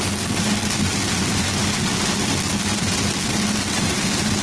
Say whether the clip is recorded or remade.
recorded